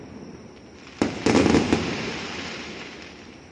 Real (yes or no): no